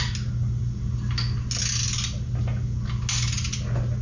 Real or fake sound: real